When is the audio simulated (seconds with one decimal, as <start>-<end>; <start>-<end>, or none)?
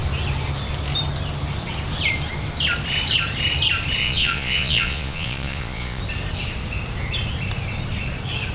4.0-6.0